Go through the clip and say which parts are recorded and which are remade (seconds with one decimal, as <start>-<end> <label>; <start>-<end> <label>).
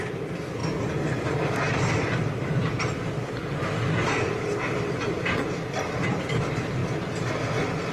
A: 0.0-0.6 remade; 0.6-1.7 recorded; 1.7-6.8 remade; 6.8-7.9 recorded